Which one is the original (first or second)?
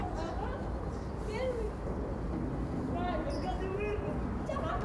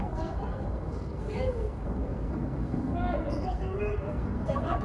first